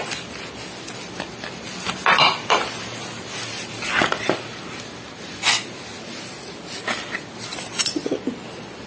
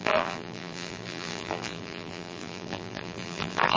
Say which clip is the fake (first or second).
second